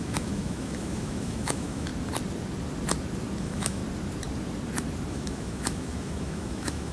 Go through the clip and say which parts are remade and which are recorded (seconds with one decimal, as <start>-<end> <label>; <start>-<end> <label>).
0.0-1.9 remade; 1.9-3.4 recorded; 3.4-3.8 remade; 3.8-5.1 recorded; 5.1-6.9 remade